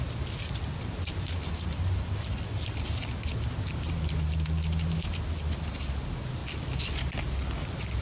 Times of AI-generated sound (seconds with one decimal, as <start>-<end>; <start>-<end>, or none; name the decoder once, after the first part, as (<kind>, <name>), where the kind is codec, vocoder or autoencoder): none

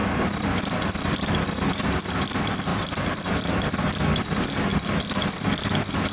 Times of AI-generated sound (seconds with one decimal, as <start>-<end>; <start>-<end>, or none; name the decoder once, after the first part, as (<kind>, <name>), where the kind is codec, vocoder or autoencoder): 0.0-1.3 (vocoder, BigVGAN v2); 2.7-3.8; 4.7-5.2

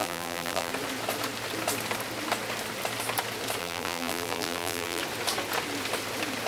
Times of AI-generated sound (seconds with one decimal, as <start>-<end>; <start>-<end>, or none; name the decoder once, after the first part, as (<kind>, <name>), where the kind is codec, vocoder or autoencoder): 0.0-0.7 (vocoder, BigVGAN v2); 3.6-5.0